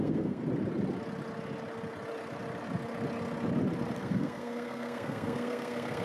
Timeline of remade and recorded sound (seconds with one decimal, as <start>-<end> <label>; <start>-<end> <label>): 0.0-0.4 remade; 0.4-4.0 recorded; 4.0-6.0 remade